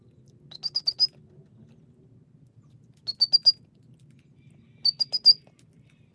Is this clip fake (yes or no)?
no